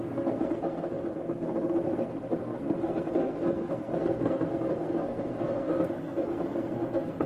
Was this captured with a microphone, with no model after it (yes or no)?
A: no